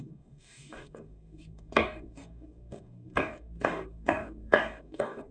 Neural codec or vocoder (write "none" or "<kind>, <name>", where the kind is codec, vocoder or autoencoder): codec, DAC